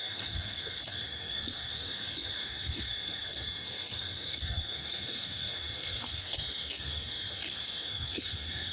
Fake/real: fake